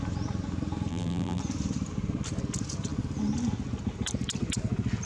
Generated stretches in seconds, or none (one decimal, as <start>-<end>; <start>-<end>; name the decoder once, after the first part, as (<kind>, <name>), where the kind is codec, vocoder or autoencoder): 0.9-1.4 (vocoder, BigVGAN v2)